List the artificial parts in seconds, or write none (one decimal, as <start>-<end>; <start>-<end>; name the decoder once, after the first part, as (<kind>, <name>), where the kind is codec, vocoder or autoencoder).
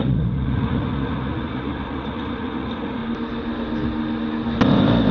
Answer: 0.0-3.0 (vocoder, Vocos)